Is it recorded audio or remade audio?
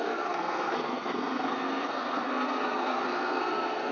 remade